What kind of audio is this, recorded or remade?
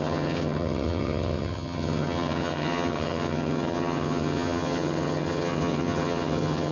remade